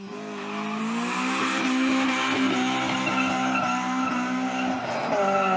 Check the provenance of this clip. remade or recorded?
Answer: recorded